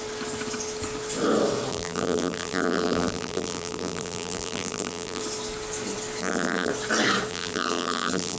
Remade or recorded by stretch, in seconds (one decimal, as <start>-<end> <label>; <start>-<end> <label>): 0.0-1.7 recorded; 1.7-5.2 remade; 5.2-6.2 recorded; 6.2-6.7 remade; 6.7-7.3 recorded; 7.3-8.4 remade